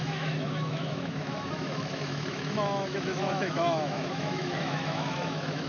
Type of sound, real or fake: fake